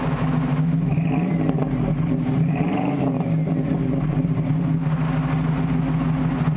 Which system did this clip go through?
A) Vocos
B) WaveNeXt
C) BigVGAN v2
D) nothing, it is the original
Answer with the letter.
D